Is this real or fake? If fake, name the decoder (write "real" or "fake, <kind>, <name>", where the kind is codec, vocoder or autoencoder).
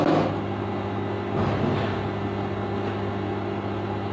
real